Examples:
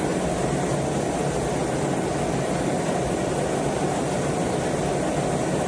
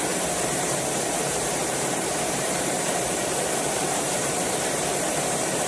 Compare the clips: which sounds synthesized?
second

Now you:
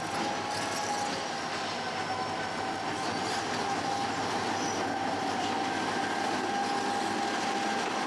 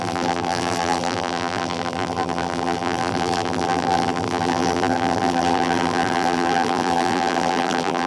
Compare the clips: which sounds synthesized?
second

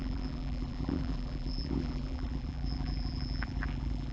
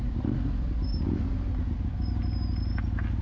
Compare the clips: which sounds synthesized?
first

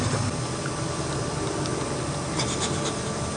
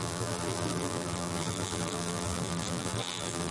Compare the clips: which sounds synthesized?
second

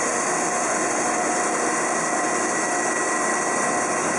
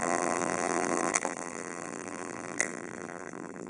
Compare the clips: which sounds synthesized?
second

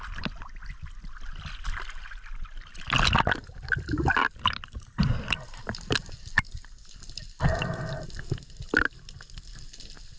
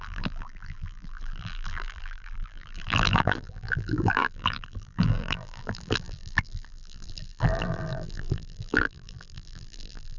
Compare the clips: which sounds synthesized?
second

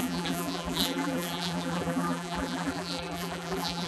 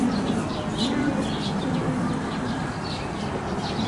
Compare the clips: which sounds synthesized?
first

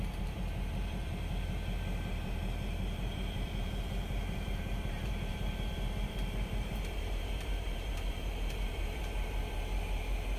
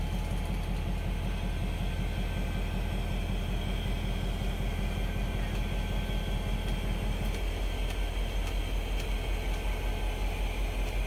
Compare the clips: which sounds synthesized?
first